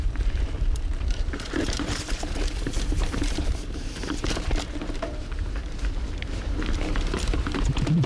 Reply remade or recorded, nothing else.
remade